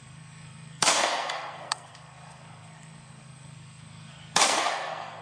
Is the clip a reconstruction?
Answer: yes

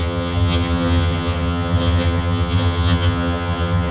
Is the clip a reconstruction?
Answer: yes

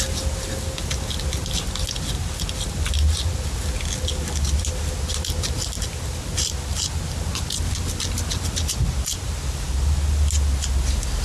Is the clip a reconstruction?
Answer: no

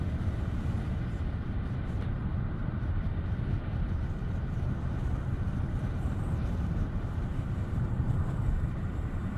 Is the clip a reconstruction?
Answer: yes